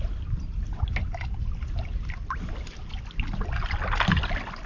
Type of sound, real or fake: real